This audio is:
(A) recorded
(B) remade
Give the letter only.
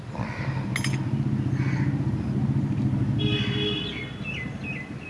A